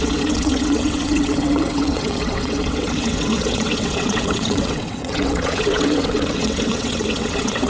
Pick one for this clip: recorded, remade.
remade